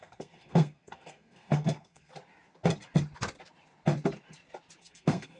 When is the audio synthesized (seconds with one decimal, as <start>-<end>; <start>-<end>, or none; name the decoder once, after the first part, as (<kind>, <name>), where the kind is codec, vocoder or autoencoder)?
0.0-2.1 (codec, SNAC); 4.8-5.4